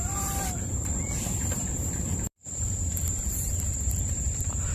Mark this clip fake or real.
fake